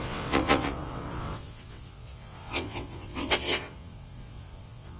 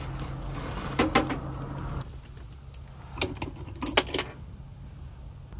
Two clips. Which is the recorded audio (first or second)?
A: second